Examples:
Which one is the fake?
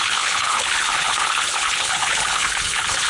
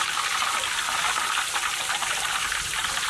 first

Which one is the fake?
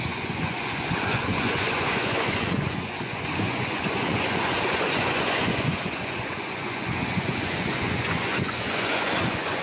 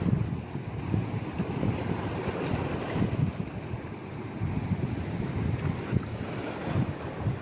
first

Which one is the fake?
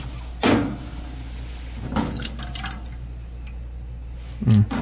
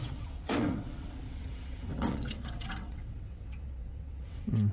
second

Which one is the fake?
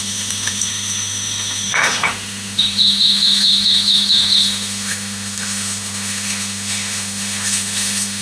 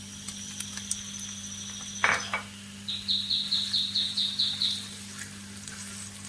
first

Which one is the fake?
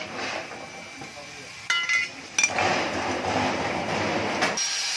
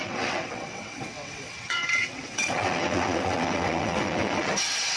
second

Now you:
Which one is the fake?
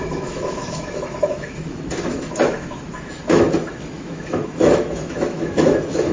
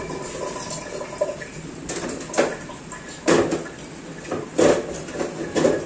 first